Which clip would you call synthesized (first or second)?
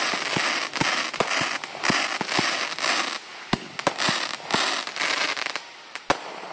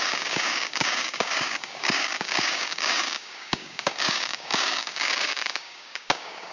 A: second